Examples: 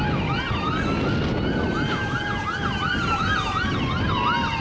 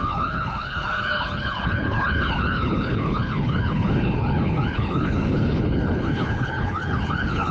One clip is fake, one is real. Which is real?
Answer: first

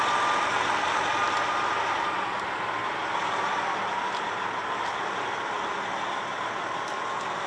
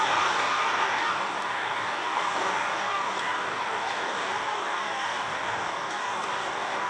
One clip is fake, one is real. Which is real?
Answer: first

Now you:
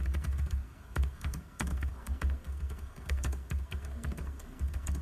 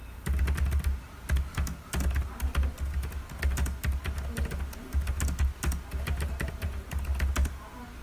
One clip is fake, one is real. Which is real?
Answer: second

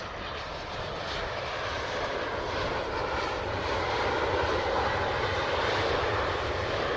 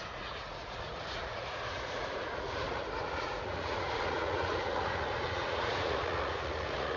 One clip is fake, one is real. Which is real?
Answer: first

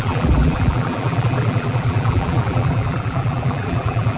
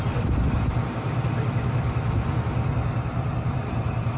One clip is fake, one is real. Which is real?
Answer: second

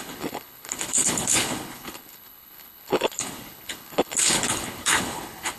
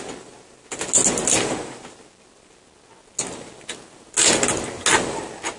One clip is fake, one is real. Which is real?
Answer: second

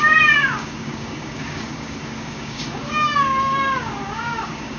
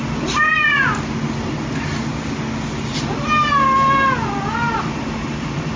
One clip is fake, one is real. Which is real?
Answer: second